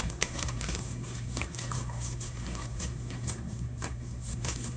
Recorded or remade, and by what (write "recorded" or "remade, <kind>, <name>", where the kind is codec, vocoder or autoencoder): remade, codec, SNAC